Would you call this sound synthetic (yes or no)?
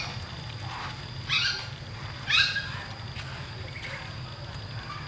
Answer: no